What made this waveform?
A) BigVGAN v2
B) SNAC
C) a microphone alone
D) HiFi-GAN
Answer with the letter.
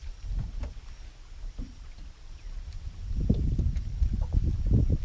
C